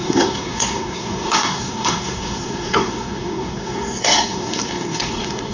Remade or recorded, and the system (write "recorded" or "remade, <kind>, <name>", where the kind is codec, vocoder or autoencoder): remade, codec, SNAC